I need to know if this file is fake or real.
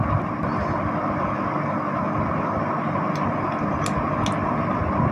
real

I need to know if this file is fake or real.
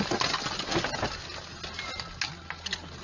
real